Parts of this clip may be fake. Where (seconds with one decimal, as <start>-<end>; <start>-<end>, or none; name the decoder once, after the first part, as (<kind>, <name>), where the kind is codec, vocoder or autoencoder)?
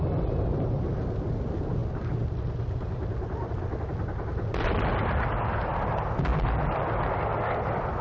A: none